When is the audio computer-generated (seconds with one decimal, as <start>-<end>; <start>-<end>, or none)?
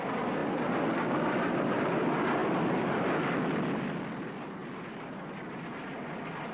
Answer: none